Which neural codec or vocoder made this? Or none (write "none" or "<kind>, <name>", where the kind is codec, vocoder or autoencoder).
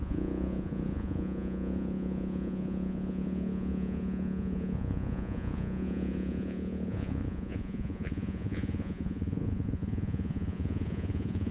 vocoder, Vocos